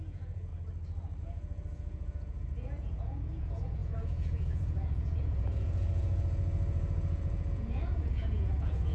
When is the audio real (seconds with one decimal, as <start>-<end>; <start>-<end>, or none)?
0.5-1.2